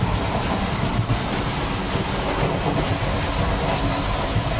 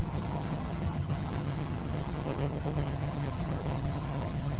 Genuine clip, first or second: first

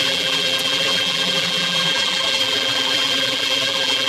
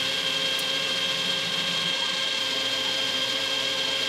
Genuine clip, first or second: second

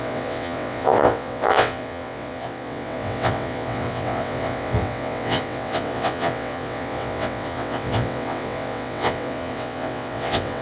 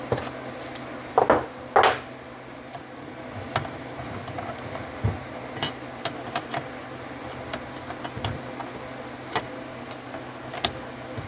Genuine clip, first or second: second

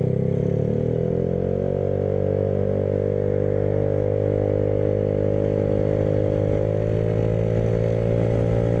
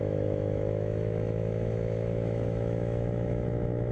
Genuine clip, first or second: first